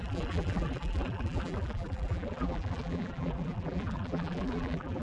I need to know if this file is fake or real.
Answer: fake